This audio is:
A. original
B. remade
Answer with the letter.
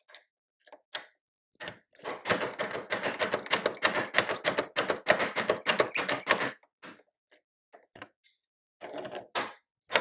A